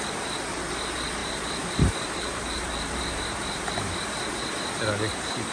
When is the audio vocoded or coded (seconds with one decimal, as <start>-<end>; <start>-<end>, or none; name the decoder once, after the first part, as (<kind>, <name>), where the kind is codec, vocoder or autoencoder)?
1.2-4.5 (vocoder, BigVGAN v2)